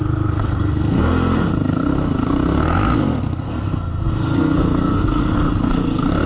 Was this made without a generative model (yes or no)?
no